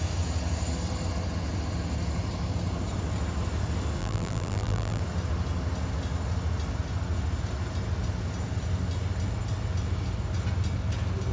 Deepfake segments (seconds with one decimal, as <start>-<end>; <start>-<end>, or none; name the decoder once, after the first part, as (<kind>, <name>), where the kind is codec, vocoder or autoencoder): 4.0-5.0 (vocoder, BigVGAN v2)